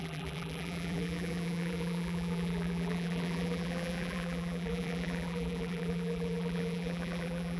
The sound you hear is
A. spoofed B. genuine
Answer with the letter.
A